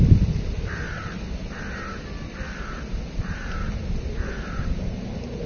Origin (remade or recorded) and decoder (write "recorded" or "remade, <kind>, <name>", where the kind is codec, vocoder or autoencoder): recorded